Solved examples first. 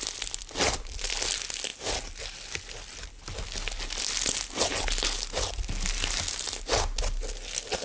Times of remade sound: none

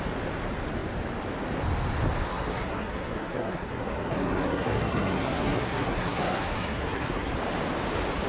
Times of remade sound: 2.3-7.3 (codec, SNAC)